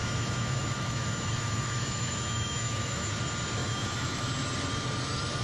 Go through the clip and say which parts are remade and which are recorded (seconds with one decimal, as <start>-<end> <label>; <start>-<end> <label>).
0.0-3.2 remade; 3.2-3.6 recorded; 3.6-4.3 remade; 4.3-5.4 recorded